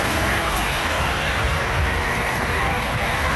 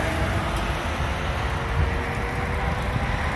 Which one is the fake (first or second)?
first